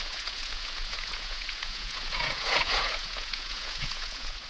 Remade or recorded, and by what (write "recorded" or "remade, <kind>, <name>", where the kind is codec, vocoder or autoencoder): remade, vocoder, Vocos